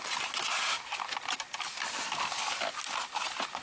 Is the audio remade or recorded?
recorded